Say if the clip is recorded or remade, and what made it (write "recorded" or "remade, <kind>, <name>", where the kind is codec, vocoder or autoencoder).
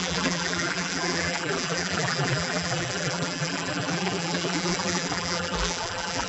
remade, vocoder, BigVGAN v2